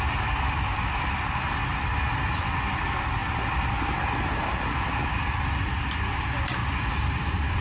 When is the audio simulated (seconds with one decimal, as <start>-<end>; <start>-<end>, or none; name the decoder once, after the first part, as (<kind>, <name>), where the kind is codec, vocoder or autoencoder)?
1.7-2.4 (vocoder, BigVGAN v2); 6.6-7.6